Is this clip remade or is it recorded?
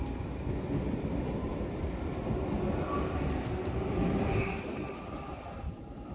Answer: recorded